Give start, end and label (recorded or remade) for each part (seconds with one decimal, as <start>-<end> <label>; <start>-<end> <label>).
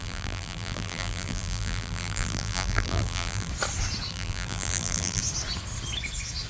0.0-3.5 remade; 3.5-4.1 recorded; 4.1-5.2 remade; 5.2-6.5 recorded